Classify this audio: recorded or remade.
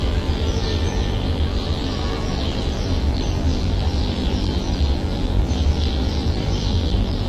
remade